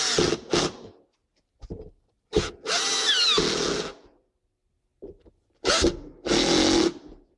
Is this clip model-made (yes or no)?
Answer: no